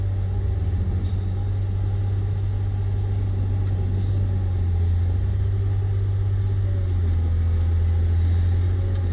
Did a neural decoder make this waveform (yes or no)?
no